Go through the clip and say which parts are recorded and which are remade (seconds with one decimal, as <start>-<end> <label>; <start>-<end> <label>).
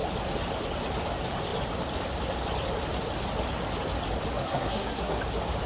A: 0.0-4.4 recorded; 4.4-5.2 remade; 5.2-5.7 recorded